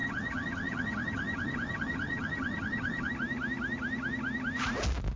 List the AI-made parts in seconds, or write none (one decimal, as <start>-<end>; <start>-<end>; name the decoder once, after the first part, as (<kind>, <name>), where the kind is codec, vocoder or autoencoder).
0.0-3.1 (vocoder, HiFi-GAN)